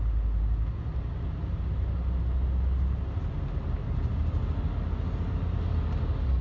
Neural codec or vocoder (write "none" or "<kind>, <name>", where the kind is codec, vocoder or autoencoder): none